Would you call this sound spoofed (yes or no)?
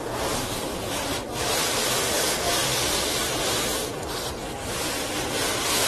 no